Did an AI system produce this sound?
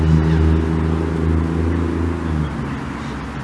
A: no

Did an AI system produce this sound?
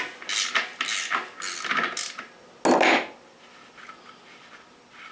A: no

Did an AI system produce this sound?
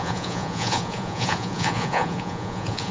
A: yes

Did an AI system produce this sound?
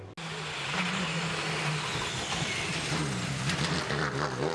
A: no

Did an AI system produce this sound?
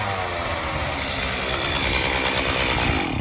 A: no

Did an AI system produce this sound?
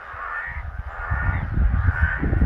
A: yes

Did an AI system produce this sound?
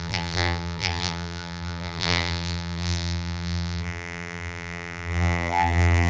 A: yes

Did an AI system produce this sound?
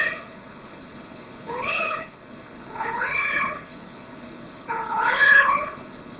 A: yes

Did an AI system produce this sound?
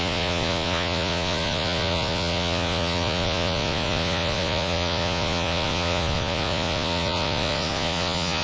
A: yes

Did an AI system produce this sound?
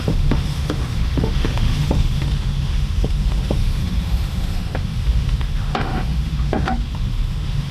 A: yes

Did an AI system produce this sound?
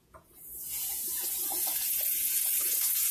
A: yes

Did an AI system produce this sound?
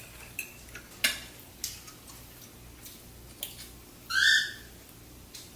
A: no